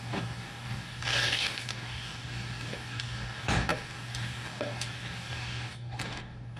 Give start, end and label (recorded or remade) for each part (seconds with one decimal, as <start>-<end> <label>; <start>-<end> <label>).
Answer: 0.0-6.6 remade